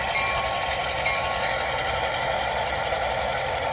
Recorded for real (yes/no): yes